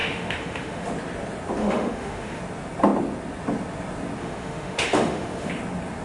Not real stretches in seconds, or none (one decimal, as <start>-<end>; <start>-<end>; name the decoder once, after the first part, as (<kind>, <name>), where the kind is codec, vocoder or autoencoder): 0.0-0.9 (autoencoder, DAC-VAE); 1.6-2.4; 4.2-5.5